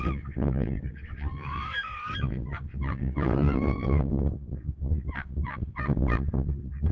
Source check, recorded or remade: remade